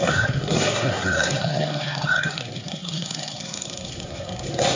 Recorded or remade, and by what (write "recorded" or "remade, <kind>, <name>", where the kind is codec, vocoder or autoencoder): remade, codec, SNAC